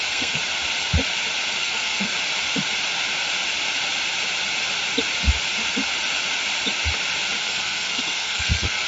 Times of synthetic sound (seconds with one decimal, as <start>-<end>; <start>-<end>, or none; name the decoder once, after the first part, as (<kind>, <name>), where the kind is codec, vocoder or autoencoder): 0.0-0.4 (codec, SNAC); 1.6-2.1; 7.4-8.9